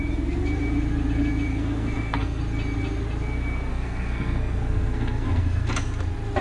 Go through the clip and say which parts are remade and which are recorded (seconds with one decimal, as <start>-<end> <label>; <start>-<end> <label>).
0.0-1.5 recorded; 1.5-2.4 remade; 2.4-3.7 recorded; 3.7-5.7 remade; 5.7-6.4 recorded